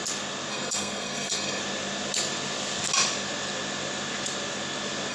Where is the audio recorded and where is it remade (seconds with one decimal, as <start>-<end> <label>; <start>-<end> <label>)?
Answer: 0.0-0.5 recorded; 0.5-1.6 remade; 1.6-5.1 recorded